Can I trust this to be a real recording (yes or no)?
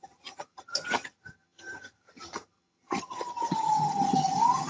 no